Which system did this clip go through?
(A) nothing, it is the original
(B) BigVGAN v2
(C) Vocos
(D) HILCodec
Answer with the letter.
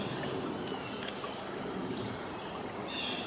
A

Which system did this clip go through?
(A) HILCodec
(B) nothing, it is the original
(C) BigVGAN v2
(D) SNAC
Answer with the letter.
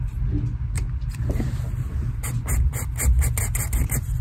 B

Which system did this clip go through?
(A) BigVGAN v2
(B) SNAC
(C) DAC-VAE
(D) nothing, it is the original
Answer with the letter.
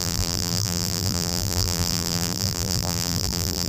A